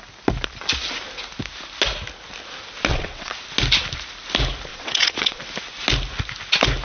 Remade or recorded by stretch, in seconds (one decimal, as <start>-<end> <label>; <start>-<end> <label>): 0.0-2.9 recorded; 2.9-3.4 remade; 3.4-4.7 recorded; 4.7-5.4 remade; 5.4-6.8 recorded